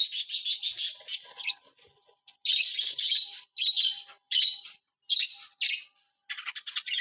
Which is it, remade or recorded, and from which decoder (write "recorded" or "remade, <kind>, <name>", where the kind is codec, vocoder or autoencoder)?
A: recorded